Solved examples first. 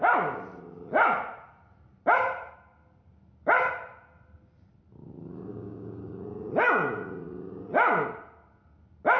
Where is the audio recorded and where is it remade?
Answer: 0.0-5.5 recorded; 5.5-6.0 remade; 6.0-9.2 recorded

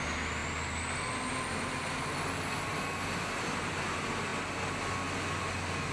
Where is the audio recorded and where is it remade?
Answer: 0.0-5.9 recorded

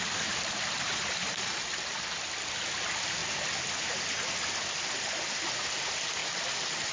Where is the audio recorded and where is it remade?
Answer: 0.0-6.9 recorded